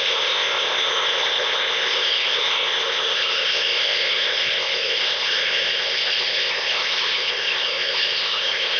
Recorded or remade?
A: remade